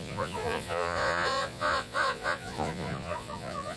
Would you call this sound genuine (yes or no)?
no